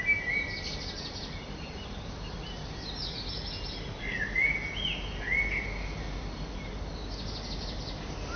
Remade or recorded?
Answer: recorded